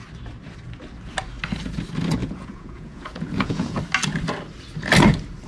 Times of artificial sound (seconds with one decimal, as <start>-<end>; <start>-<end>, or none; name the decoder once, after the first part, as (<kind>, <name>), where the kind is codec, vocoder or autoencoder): 2.2-3.8 (vocoder, Vocos)